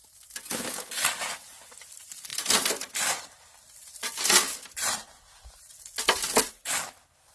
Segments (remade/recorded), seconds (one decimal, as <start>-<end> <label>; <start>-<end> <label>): 0.0-7.3 recorded